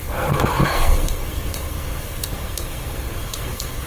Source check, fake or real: fake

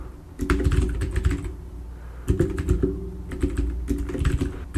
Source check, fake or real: real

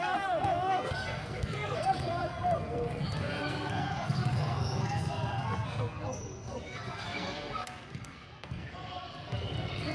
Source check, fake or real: fake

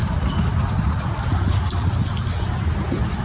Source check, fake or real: real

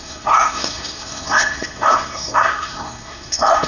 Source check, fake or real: fake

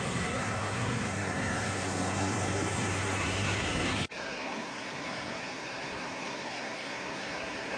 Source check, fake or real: fake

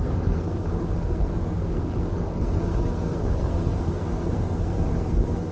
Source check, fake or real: fake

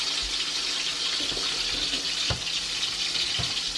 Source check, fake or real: real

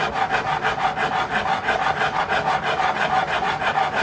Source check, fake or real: real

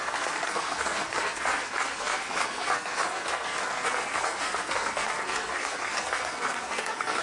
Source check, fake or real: fake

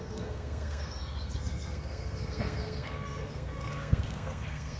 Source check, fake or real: fake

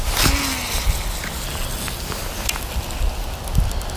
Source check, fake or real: real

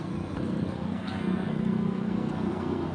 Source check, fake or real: fake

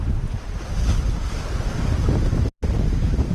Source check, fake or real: real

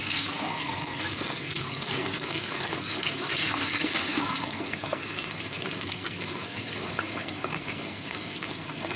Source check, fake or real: fake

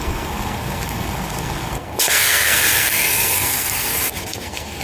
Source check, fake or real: fake